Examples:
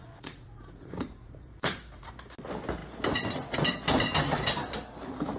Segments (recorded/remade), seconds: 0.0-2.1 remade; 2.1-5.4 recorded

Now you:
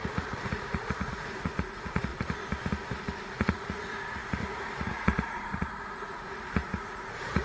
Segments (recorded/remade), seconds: 0.0-2.1 remade; 2.1-3.2 recorded; 3.2-7.4 remade

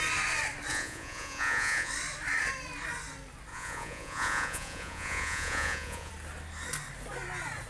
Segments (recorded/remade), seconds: 0.0-0.7 recorded; 0.7-1.9 remade; 1.9-3.5 recorded; 3.5-6.1 remade; 6.1-7.7 recorded